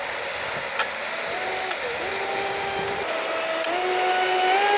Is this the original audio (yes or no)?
yes